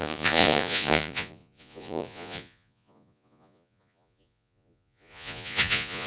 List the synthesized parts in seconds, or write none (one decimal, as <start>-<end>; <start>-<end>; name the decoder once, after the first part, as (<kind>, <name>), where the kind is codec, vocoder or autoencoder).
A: 0.0-6.1 (vocoder, Vocos)